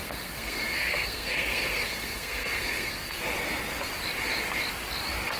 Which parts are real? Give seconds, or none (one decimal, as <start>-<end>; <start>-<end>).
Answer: 3.2-5.4